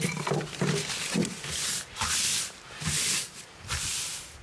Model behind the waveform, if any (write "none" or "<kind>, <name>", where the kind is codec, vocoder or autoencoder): none